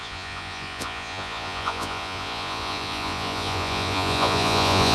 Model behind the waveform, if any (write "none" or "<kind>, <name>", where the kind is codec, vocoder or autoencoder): vocoder, Vocos